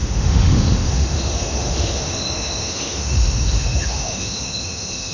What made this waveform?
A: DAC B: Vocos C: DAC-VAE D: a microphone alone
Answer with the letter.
C